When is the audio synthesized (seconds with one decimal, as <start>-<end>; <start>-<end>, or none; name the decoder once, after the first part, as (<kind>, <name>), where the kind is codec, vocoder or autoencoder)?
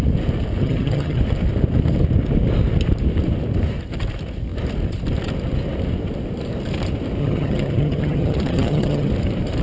0.6-1.2 (vocoder, HiFi-GAN); 7.2-9.1